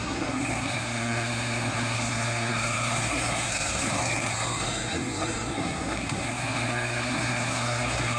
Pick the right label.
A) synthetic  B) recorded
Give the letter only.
A